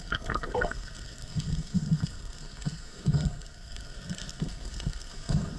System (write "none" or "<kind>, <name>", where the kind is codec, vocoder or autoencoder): codec, SNAC